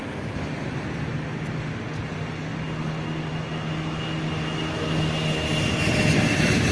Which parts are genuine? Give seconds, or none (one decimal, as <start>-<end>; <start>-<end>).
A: 0.0-6.7